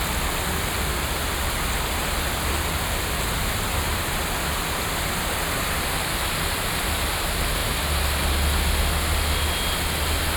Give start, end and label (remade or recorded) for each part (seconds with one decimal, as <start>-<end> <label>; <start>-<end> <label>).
0.0-10.4 recorded